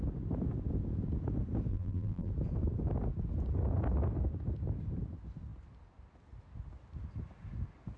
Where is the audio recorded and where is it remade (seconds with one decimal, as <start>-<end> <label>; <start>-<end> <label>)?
0.0-1.7 recorded; 1.7-2.3 remade; 2.3-8.0 recorded